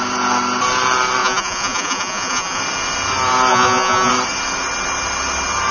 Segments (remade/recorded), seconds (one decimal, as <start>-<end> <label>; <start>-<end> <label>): 0.0-1.2 recorded; 1.2-2.6 remade; 2.6-3.5 recorded; 3.5-4.1 remade; 4.1-5.7 recorded